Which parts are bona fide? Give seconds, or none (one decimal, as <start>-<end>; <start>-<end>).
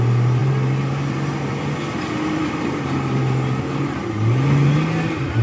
0.0-0.4; 3.6-5.4